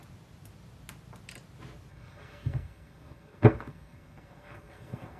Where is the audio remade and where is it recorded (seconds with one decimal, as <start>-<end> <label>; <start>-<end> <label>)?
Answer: 0.0-1.9 recorded; 1.9-5.2 remade